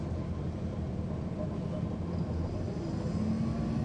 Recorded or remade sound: recorded